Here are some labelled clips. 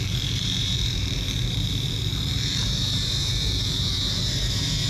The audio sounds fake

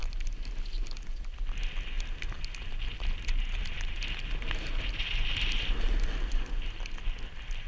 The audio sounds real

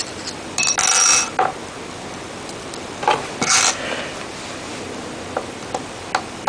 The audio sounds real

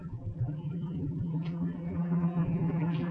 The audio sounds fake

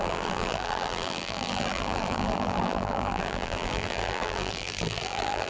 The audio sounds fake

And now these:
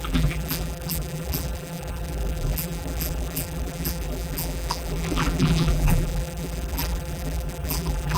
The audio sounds fake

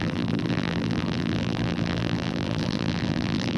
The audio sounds fake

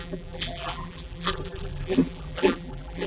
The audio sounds fake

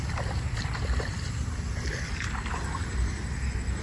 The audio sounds fake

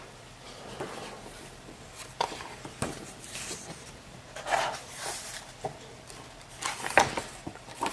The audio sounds fake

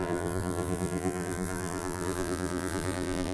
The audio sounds fake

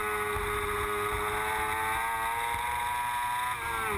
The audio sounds real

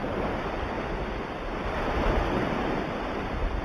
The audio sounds real